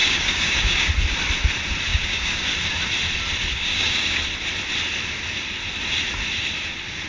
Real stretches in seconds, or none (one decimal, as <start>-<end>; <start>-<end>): 0.9-1.9; 2.5-3.5; 4.2-7.1